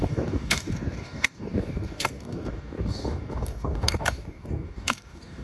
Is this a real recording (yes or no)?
no